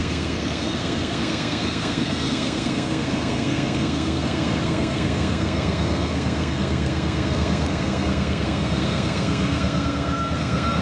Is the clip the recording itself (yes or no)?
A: no